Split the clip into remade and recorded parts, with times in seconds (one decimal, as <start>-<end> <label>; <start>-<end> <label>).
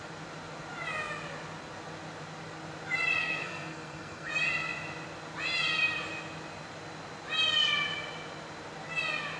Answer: 0.0-3.2 recorded; 3.2-4.3 remade; 4.3-9.4 recorded